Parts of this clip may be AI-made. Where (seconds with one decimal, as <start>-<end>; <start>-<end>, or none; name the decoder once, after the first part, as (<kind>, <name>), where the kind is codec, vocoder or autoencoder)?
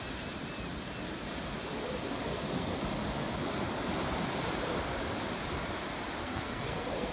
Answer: 2.3-2.8 (codec, SNAC); 6.2-7.1